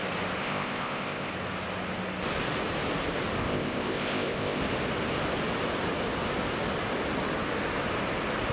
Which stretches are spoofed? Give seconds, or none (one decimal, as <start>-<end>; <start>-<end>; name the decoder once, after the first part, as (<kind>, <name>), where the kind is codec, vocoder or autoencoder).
0.4-1.3 (codec, ZipCodec); 3.4-4.6